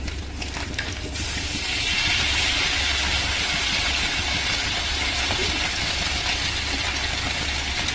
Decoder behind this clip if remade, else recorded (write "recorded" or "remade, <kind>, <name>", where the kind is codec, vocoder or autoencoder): recorded